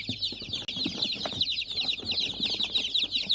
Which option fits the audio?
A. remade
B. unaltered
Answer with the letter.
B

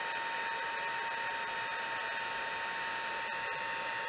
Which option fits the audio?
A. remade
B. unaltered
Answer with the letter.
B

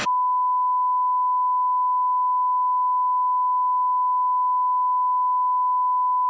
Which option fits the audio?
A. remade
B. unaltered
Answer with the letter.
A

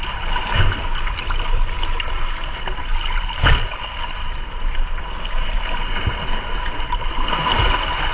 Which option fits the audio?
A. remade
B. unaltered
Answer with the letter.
B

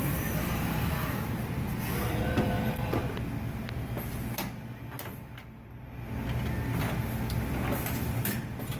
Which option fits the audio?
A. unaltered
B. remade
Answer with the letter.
A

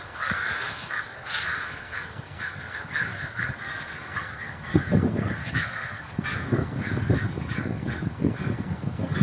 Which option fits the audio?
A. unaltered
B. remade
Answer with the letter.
B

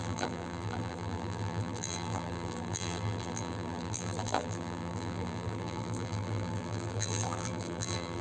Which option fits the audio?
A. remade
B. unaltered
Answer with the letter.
A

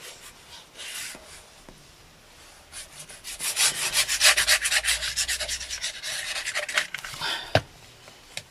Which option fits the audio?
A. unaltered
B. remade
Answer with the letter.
A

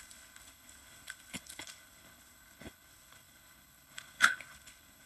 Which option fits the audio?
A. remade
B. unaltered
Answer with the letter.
A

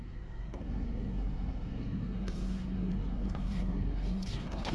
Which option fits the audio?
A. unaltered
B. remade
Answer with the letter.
B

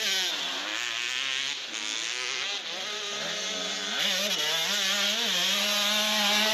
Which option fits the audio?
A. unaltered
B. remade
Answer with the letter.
A